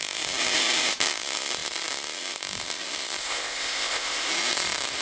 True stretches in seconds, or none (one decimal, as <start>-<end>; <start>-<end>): 0.0-3.2; 4.3-5.0